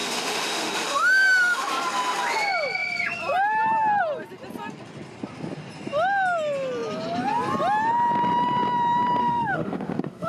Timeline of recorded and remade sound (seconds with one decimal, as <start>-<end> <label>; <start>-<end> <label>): 0.0-1.7 remade; 1.7-9.2 recorded; 9.2-10.3 remade